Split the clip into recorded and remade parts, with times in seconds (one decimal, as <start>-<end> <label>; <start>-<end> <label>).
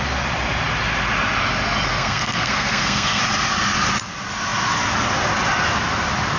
0.0-1.9 recorded; 1.9-3.2 remade; 3.2-6.4 recorded